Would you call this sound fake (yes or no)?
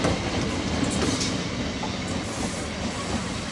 no